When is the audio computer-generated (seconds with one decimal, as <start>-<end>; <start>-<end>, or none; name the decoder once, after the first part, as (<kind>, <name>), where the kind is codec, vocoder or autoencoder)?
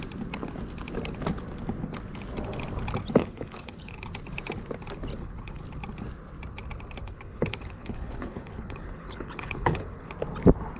3.2-4.1 (codec, HILCodec); 5.1-5.6; 7.0-10.1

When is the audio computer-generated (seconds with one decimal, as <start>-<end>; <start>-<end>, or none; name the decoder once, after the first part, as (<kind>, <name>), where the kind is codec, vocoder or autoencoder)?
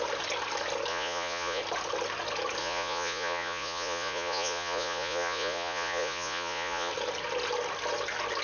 0.9-1.6 (vocoder, Vocos); 2.6-6.9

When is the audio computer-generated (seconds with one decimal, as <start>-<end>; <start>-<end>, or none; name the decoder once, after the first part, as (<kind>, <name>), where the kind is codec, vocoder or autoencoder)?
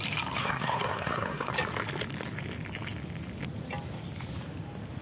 0.4-1.5 (codec, SNAC)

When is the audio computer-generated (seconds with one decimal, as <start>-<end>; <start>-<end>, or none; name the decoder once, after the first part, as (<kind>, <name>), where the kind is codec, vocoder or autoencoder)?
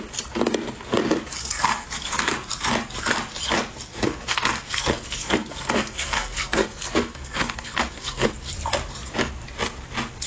1.4-2.3 (codec, SNAC); 3.9-8.3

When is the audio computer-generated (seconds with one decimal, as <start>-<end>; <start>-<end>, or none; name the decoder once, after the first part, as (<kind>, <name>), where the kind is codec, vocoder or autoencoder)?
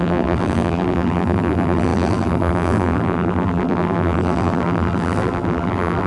0.0-6.1 (vocoder, BigVGAN v2)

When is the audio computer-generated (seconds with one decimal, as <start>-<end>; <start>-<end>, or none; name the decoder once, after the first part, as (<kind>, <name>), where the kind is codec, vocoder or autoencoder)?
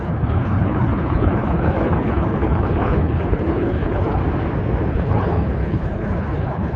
0.0-4.2 (codec, HILCodec); 4.9-6.8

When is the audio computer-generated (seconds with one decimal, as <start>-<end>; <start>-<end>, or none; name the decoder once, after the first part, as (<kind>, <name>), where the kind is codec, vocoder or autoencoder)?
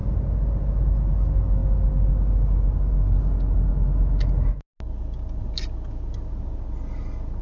none